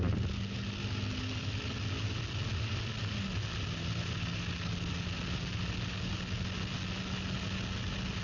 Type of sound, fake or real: real